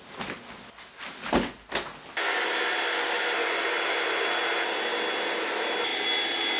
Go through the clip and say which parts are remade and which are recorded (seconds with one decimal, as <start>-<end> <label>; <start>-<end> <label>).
0.0-6.6 recorded